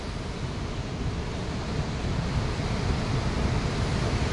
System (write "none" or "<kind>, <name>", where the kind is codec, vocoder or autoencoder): none